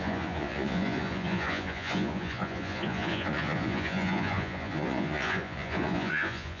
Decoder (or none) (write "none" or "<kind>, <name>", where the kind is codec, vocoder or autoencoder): vocoder, Vocos